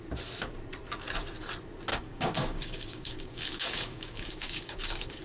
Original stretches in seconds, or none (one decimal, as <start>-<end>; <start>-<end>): 0.0-1.9